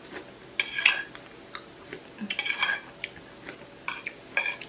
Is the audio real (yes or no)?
yes